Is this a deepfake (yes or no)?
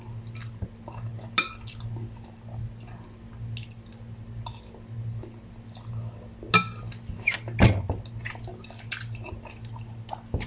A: no